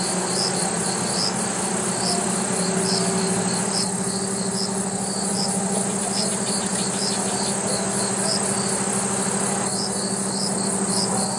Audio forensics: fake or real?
real